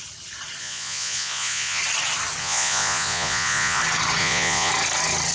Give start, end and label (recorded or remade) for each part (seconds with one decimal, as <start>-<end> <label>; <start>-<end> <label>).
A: 0.0-0.6 recorded; 0.6-1.8 remade; 1.8-2.4 recorded; 2.4-3.8 remade; 3.8-4.2 recorded; 4.2-4.7 remade; 4.7-5.3 recorded